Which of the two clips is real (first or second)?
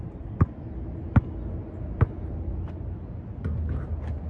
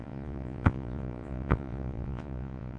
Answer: first